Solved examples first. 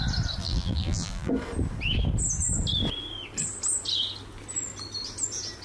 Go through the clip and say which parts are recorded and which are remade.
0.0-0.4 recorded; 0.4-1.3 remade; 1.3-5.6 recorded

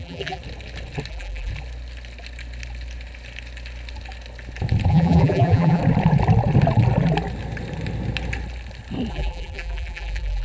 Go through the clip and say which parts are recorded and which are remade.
0.0-0.4 remade; 0.4-1.1 recorded; 1.1-1.5 remade; 1.5-4.9 recorded; 4.9-5.8 remade; 5.8-9.1 recorded; 9.1-10.4 remade

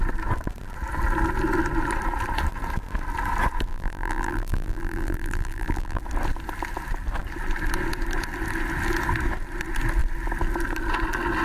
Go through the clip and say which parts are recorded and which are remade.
0.0-3.7 recorded; 3.7-6.0 remade; 6.0-11.4 recorded

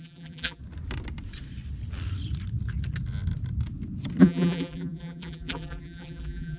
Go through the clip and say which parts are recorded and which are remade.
0.0-0.6 remade; 0.6-4.2 recorded; 4.2-6.6 remade

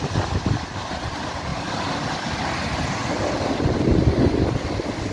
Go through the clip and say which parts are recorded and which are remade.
0.0-5.1 recorded

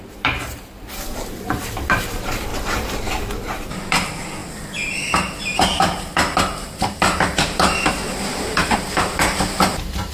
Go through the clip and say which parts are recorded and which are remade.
0.0-2.5 remade; 2.5-3.5 recorded; 3.5-10.1 remade